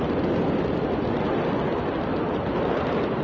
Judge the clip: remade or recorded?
recorded